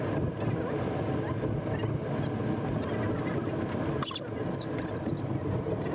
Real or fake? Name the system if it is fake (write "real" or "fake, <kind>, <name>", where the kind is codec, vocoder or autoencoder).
real